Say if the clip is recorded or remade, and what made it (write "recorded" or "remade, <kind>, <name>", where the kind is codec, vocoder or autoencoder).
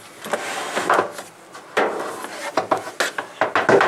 recorded